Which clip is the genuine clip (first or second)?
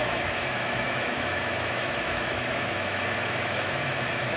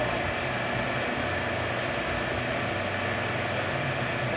second